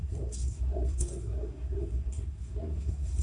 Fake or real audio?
fake